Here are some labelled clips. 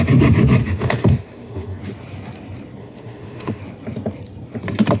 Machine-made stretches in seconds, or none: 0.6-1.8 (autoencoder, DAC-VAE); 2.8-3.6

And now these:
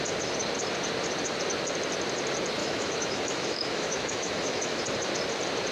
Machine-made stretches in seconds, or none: 2.6-4.8 (autoencoder, DAC-VAE)